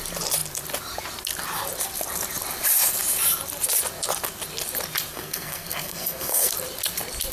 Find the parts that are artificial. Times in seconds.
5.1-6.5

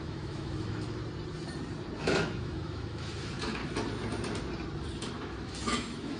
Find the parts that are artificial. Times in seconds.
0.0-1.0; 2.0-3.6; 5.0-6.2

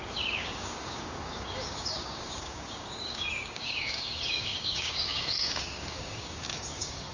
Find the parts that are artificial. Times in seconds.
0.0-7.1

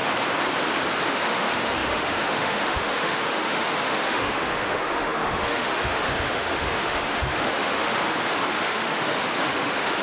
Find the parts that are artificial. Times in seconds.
1.1-10.0

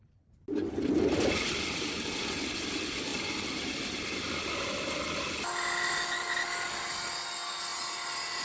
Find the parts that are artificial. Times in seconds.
none

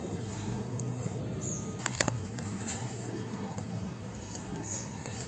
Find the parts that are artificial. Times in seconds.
0.0-1.2; 1.8-5.3